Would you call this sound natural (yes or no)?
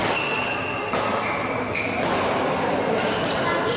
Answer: yes